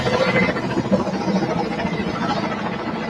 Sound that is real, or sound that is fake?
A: real